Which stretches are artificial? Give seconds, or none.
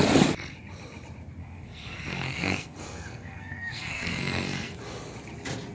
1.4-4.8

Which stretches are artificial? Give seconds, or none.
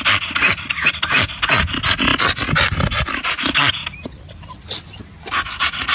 none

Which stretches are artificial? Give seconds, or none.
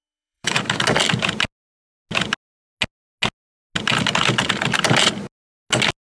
0.0-0.6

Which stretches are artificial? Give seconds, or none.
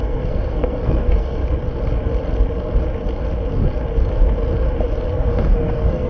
0.0-1.4; 5.1-6.1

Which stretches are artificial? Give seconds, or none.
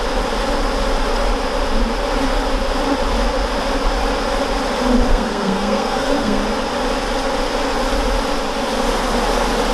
5.1-6.4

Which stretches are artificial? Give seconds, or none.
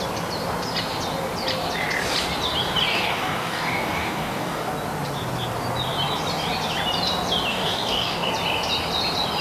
2.9-4.7; 7.5-8.3